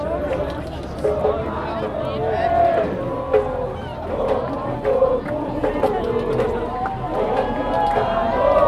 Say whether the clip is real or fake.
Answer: real